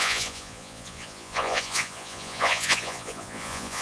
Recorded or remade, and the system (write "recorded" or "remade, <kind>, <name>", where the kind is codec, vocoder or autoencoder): remade, vocoder, Vocos